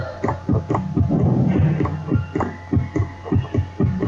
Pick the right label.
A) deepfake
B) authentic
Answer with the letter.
B